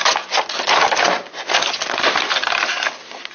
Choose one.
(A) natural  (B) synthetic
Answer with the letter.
A